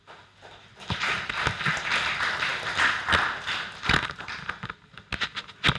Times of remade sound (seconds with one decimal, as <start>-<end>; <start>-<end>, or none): none

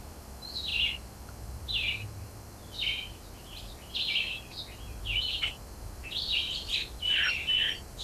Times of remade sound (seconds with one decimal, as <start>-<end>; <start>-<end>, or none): none

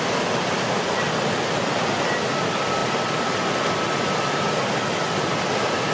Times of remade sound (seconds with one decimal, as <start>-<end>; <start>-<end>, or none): none

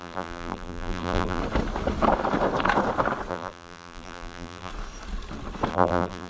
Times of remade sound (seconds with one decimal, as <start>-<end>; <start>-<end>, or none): 0.0-1.4; 3.3-4.7; 5.7-6.3

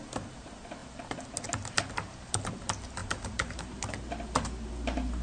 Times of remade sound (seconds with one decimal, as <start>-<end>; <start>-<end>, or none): 3.0-3.6